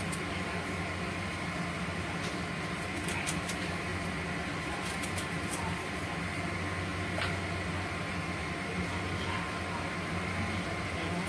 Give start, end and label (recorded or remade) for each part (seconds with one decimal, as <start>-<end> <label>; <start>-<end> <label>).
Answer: 0.0-11.3 recorded